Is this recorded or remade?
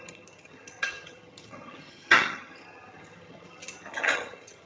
remade